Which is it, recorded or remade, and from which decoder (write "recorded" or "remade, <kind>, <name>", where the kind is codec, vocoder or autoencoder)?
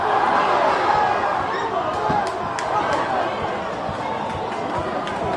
recorded